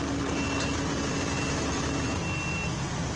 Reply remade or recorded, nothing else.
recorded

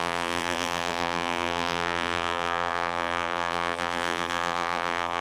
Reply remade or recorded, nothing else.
remade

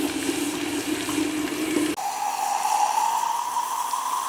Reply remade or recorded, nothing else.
recorded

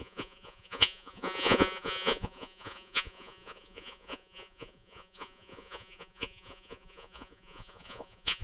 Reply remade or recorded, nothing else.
remade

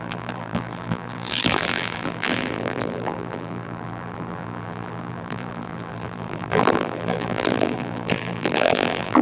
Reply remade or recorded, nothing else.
remade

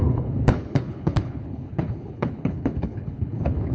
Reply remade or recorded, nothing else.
remade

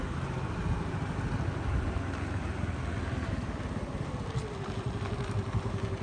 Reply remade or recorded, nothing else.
recorded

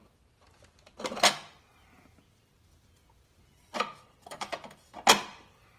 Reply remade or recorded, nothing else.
recorded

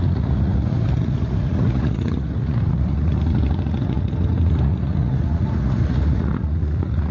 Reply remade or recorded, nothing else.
remade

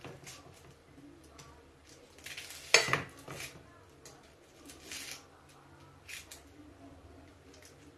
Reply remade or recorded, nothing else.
recorded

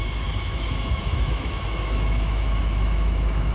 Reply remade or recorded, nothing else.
remade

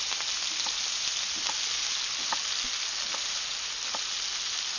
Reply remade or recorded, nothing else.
recorded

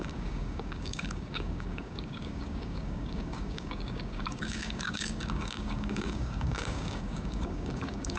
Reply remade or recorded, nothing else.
remade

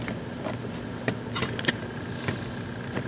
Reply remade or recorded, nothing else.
recorded